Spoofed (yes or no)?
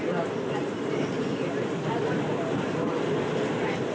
no